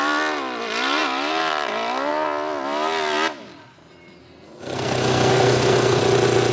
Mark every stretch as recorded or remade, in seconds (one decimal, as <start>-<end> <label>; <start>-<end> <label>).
0.0-4.2 recorded; 4.2-6.0 remade; 6.0-6.5 recorded